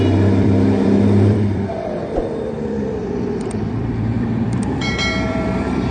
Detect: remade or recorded remade